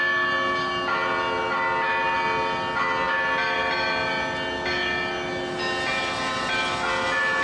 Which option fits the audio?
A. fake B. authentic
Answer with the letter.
B